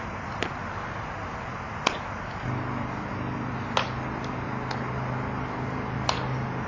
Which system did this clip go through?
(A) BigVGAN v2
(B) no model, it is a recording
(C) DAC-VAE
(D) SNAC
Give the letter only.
B